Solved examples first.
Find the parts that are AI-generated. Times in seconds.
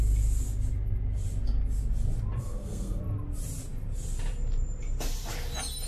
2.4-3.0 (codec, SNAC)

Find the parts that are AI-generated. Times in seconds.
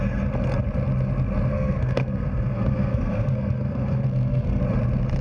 1.5-4.6 (codec, SNAC)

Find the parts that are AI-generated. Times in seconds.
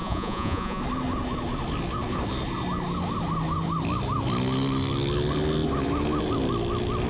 0.0-0.8 (vocoder, Vocos)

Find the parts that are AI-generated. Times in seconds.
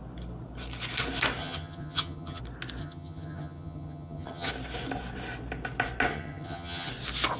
1.4-2.4 (vocoder, HiFi-GAN); 2.8-4.5; 6.1-6.9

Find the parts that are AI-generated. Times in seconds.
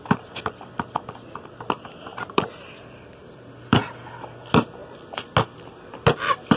2.1-3.8 (vocoder, BigVGAN v2)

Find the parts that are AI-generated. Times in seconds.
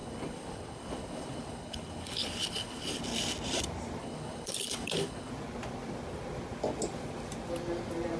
0.0-3.0 (codec, HILCodec); 4.0-5.3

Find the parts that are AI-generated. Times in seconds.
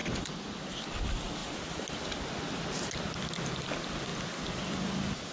0.0-0.6 (vocoder, BigVGAN v2)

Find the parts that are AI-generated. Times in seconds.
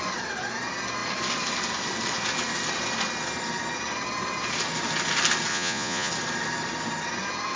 5.5-6.1 (vocoder, Vocos)